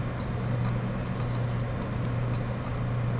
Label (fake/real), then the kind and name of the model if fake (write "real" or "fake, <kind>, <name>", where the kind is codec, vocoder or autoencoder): real